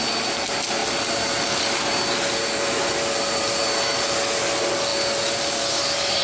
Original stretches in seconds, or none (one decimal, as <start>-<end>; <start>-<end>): 0.0-6.2